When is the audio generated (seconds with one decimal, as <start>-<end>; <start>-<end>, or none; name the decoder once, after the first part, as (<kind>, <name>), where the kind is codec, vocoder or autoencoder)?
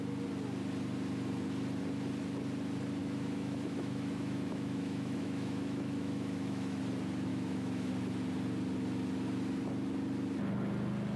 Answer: 3.0-6.8 (autoencoder, DAC-VAE); 7.3-7.9